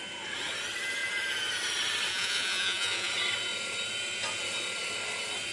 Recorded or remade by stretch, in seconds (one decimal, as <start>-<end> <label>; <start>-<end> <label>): 0.0-2.1 recorded; 2.1-3.1 remade; 3.1-5.5 recorded